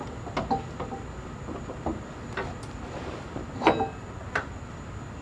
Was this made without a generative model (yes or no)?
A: yes